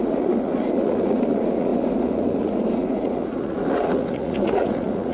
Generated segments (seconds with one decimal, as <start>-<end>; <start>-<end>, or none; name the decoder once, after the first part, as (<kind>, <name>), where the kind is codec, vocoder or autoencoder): 0.0-5.1 (vocoder, Vocos)